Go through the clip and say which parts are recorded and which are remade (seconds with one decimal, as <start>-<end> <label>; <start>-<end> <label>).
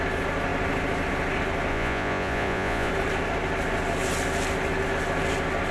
0.0-1.7 recorded; 1.7-2.9 remade; 2.9-5.7 recorded